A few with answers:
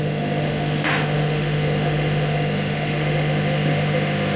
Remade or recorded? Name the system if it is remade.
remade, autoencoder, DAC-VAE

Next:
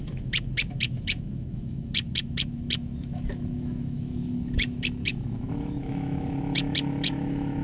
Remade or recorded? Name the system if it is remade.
remade, autoencoder, DAC-VAE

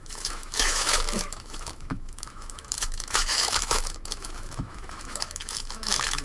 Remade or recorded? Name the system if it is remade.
remade, autoencoder, DAC-VAE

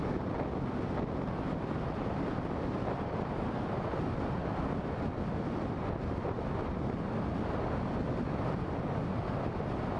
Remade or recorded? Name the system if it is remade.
recorded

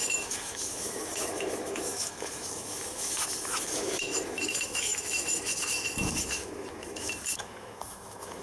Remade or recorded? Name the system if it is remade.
remade, autoencoder, DAC-VAE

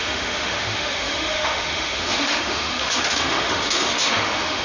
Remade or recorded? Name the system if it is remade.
remade, autoencoder, DAC-VAE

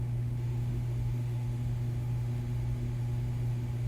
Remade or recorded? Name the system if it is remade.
remade, autoencoder, DAC-VAE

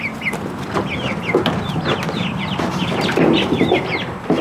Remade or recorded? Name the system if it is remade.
recorded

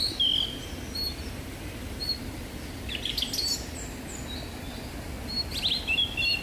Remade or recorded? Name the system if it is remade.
recorded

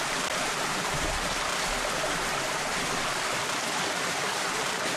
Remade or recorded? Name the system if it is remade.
recorded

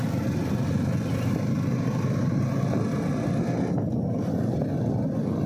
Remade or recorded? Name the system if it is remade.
recorded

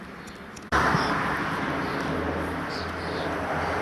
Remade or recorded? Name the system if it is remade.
recorded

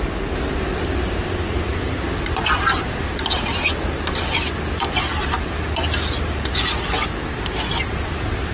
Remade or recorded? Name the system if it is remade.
recorded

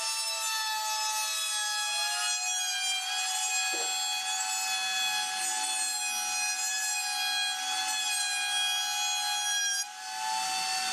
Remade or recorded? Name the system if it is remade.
recorded